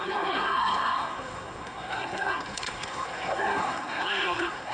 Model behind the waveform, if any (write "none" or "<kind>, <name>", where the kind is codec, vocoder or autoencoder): codec, SNAC